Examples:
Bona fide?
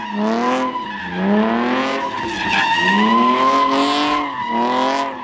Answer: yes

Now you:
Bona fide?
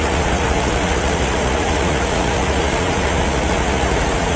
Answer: no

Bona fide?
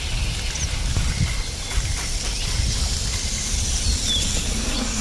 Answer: yes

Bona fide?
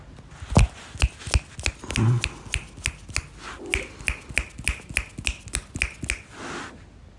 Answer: yes